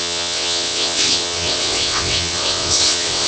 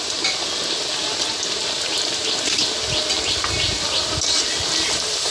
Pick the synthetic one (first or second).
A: first